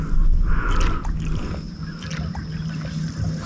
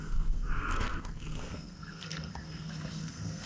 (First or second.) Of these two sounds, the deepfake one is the second